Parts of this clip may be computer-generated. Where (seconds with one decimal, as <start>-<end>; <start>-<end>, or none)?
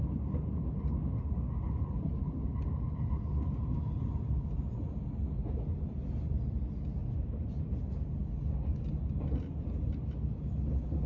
7.0-7.7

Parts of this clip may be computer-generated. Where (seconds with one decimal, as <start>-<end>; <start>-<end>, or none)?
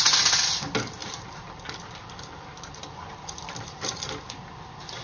1.0-4.0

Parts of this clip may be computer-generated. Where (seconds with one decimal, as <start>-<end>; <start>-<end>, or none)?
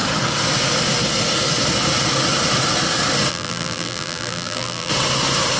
3.3-4.9